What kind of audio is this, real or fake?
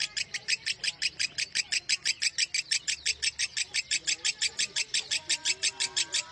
real